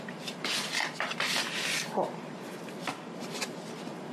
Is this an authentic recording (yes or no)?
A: yes